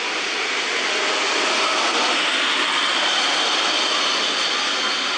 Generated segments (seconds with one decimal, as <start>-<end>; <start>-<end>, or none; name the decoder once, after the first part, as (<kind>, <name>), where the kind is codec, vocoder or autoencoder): none